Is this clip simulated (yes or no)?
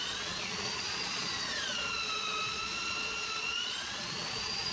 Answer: yes